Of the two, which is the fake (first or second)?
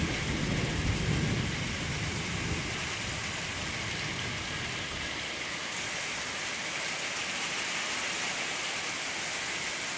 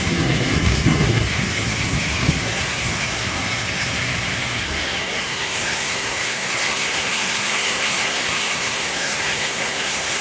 second